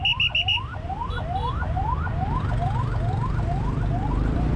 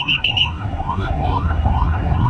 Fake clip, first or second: second